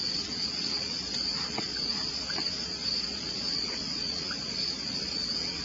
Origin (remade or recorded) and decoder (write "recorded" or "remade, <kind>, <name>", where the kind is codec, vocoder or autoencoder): remade, vocoder, Vocos